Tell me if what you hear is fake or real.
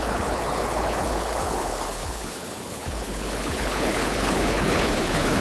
fake